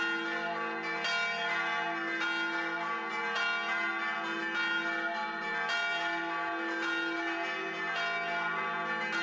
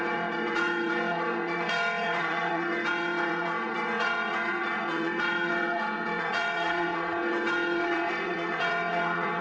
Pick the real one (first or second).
first